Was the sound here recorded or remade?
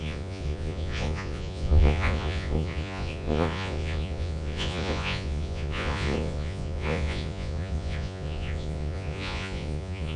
remade